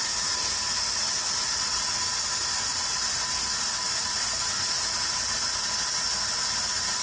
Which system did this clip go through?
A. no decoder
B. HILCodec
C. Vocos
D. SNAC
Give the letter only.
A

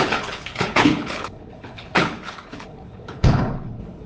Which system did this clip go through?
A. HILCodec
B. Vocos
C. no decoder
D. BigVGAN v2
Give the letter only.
A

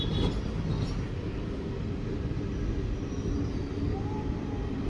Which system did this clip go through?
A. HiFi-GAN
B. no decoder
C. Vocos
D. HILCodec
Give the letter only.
B